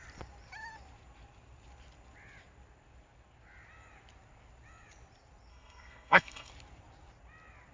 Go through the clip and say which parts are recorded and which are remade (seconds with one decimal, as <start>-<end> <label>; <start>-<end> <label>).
0.0-5.5 recorded; 5.5-6.5 remade; 6.5-7.7 recorded